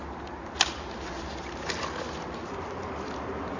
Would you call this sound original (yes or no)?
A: yes